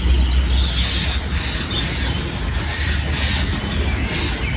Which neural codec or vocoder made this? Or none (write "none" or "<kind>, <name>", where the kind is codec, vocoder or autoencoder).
none